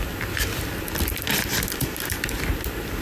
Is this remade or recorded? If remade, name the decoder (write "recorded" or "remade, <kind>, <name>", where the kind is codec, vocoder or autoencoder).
remade, vocoder, BigVGAN v2